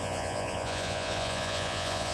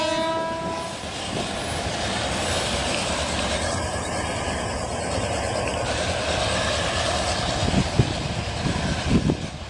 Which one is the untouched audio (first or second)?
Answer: second